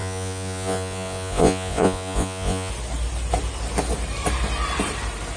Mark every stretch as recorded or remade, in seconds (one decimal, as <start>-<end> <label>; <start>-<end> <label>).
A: 0.0-2.7 remade; 2.7-5.4 recorded